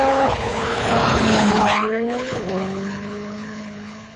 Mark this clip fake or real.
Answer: fake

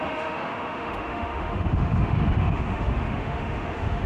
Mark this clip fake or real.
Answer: fake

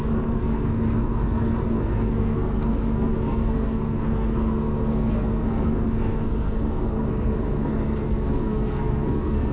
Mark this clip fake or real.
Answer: fake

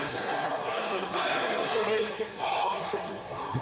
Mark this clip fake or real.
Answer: fake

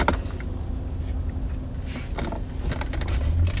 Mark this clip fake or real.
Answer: real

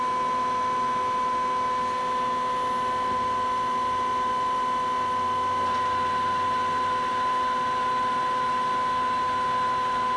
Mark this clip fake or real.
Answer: real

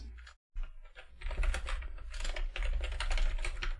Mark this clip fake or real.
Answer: real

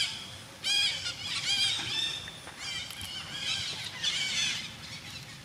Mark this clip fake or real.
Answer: real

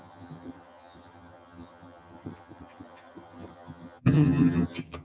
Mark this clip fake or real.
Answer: fake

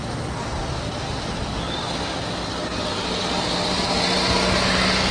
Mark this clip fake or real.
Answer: real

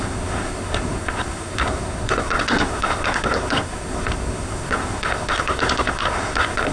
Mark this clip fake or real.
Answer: fake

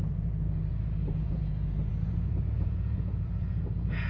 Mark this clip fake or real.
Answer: fake